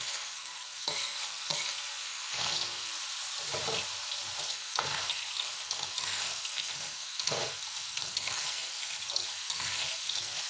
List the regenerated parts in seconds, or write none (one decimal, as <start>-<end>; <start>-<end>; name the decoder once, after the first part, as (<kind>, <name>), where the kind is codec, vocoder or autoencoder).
0.0-2.9 (codec, SNAC); 4.5-10.5